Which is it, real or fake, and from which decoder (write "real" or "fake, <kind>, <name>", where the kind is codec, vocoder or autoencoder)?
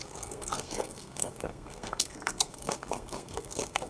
fake, codec, SNAC